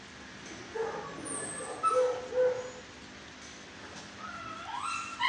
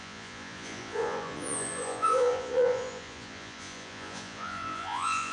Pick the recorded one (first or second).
first